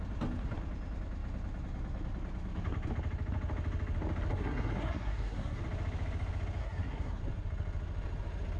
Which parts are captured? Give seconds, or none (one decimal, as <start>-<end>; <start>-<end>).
0.0-4.3; 5.6-6.6; 7.2-8.6

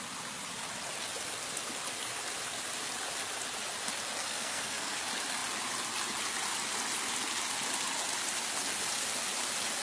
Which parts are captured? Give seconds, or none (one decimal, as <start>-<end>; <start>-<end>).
0.0-4.2; 5.0-9.8

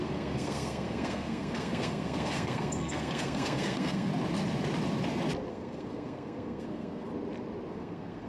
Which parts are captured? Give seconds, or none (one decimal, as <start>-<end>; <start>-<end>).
4.1-5.5; 7.1-7.7

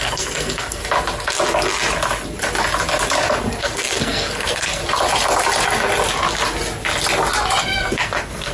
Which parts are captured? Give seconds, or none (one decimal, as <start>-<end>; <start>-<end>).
0.8-3.6; 4.8-7.6

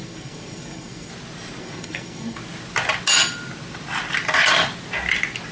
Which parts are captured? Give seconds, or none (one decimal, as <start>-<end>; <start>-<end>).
1.1-1.6; 2.4-5.5